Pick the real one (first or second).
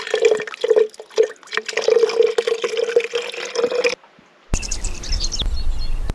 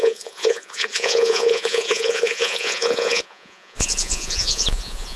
first